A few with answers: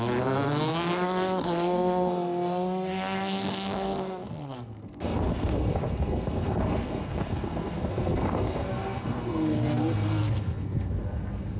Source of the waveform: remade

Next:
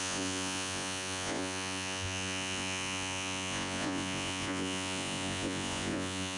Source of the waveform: remade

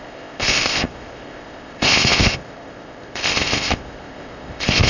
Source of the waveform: remade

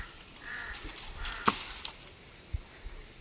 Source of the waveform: recorded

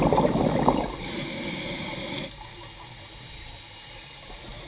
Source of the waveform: recorded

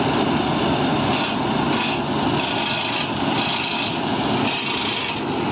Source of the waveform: recorded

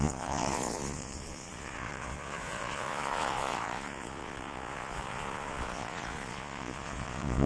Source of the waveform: remade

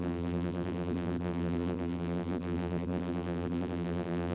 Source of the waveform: remade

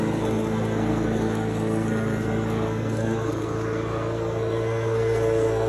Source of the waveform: remade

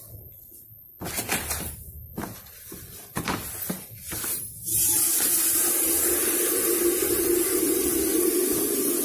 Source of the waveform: recorded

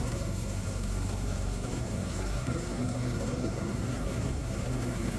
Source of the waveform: remade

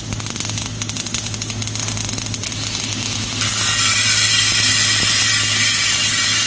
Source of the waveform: recorded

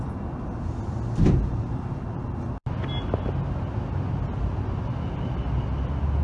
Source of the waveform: recorded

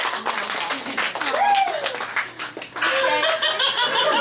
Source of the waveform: recorded